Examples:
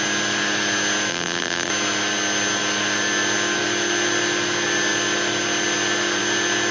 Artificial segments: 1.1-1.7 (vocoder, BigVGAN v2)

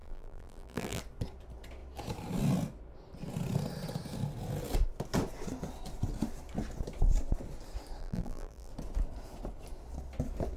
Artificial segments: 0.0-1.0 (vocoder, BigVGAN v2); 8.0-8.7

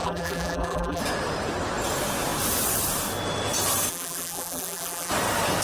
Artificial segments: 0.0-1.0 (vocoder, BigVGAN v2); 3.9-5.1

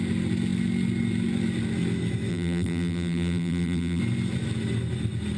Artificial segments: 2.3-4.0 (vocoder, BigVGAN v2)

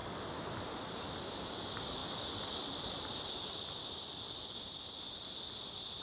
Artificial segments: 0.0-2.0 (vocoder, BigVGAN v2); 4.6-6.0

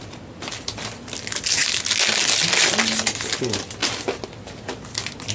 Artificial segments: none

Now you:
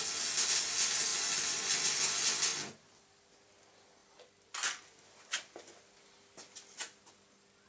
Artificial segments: none

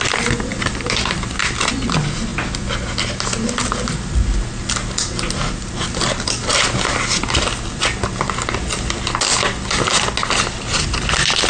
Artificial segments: 0.5-1.4 (vocoder, BigVGAN v2)